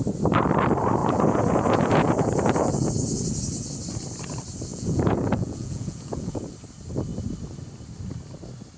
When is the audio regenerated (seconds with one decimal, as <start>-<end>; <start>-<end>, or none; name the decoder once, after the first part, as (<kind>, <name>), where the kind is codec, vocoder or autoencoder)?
1.0-2.9 (vocoder, Vocos); 4.7-6.4

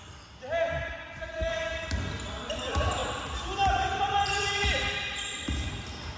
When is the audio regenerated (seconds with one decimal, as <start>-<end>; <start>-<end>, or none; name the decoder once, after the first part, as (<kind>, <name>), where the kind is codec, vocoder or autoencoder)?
none

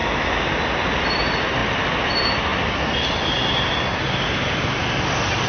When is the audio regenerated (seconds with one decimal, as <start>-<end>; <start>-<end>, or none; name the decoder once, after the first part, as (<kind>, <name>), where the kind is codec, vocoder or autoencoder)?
0.0-0.5 (autoencoder, DAC-VAE)

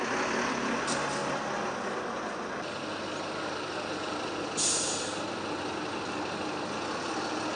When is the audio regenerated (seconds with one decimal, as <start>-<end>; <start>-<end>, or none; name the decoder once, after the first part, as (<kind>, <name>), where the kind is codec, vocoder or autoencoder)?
none

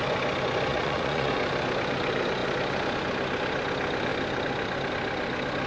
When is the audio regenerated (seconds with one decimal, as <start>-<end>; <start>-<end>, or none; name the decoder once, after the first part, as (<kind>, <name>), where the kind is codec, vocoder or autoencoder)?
0.7-1.3 (vocoder, Vocos)